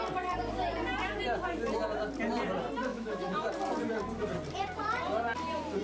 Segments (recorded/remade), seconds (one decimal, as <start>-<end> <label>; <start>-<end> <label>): 0.0-2.9 recorded; 2.9-3.5 remade; 3.5-5.8 recorded